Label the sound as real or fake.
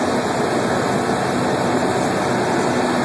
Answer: real